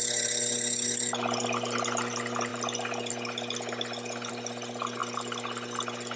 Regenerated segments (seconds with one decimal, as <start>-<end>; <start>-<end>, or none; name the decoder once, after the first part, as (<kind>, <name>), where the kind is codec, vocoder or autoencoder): none